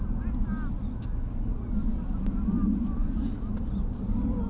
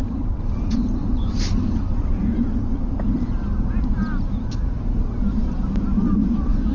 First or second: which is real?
first